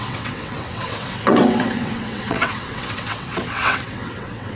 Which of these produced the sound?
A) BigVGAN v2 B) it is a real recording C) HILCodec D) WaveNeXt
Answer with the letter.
D